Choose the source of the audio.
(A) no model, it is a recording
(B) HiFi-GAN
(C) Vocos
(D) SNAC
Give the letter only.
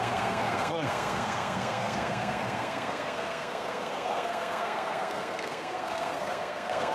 D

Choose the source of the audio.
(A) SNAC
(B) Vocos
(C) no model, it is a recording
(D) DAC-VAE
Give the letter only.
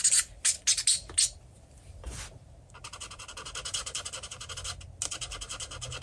C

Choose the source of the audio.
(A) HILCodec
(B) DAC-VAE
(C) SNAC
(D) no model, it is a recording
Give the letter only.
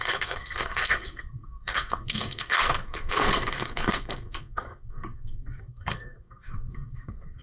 C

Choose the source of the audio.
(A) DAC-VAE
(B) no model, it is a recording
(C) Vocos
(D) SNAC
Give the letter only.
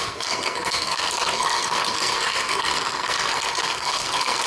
D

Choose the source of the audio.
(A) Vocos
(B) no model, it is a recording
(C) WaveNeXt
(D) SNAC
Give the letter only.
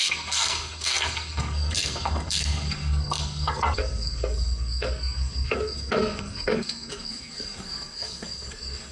D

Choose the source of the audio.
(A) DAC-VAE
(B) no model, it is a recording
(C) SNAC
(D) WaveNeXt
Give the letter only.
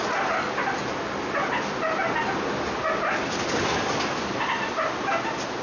B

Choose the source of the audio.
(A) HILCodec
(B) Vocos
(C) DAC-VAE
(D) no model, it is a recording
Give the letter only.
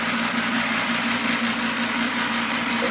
D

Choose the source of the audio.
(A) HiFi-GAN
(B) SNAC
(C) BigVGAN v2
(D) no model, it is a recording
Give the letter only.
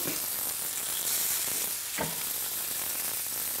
D